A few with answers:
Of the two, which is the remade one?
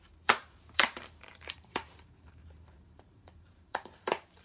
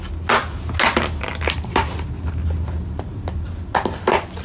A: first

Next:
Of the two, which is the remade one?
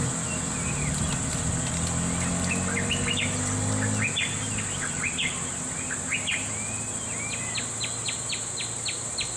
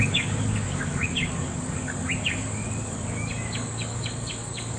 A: second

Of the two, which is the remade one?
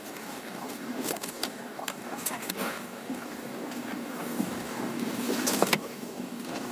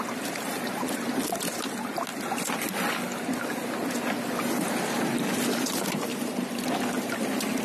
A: first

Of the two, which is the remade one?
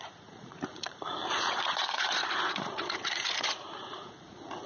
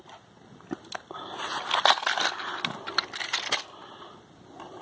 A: first